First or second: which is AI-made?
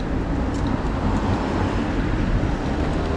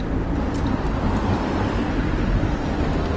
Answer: second